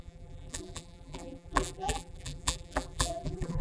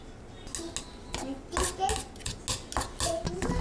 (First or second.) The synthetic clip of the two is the first